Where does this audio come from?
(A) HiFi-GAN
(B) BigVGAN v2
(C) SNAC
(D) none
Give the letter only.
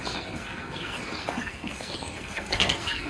C